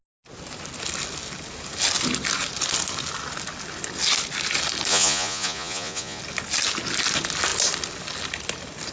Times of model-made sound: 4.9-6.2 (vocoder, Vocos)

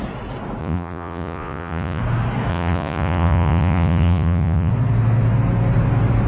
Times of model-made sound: 0.6-2.0 (vocoder, Vocos); 2.5-4.7

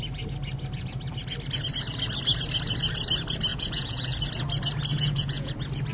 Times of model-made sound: 3.5-4.2 (vocoder, Vocos); 4.9-5.5

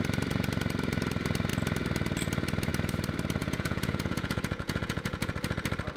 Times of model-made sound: 3.4-5.3 (vocoder, Vocos)

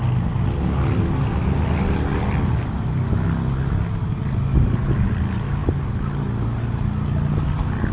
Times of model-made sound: none